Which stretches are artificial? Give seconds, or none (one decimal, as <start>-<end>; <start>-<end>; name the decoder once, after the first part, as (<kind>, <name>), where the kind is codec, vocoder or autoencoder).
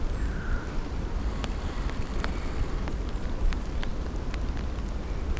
0.0-3.9 (vocoder, BigVGAN v2)